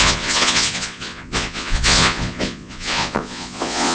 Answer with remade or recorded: remade